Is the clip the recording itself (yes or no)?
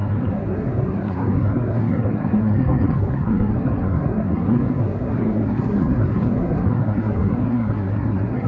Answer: no